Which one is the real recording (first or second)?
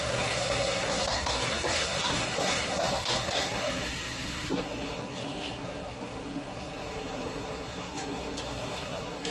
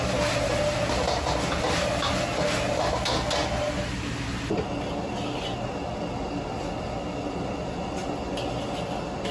second